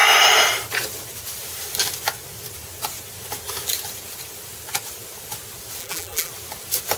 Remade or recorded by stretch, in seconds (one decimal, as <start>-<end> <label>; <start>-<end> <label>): 0.0-5.8 recorded; 5.8-6.3 remade; 6.3-7.0 recorded